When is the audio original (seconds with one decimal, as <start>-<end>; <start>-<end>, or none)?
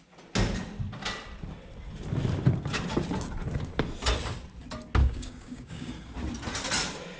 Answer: 0.0-5.0; 5.9-7.2